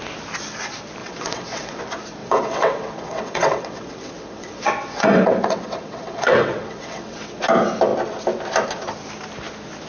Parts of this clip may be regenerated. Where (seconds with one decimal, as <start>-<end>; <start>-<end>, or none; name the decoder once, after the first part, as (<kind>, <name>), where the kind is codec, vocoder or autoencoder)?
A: 1.0-1.8 (vocoder, WaveNeXt); 2.2-7.4